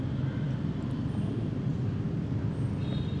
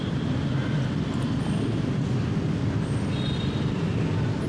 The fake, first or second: second